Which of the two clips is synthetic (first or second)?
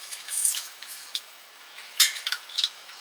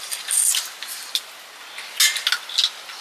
first